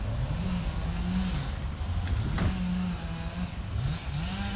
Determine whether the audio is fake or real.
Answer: real